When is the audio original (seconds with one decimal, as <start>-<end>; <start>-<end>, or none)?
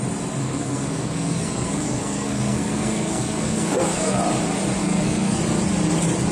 0.0-0.4; 4.2-4.8; 5.4-6.3